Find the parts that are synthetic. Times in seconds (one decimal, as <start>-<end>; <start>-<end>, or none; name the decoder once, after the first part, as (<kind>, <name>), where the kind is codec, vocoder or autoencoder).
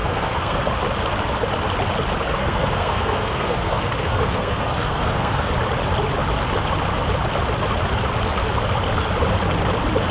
0.0-0.6 (codec, SNAC); 2.4-5.5